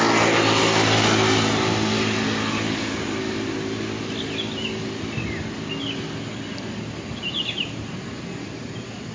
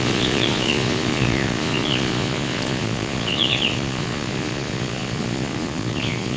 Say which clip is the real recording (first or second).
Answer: first